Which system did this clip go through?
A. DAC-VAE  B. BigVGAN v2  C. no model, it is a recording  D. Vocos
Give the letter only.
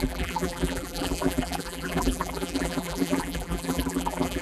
B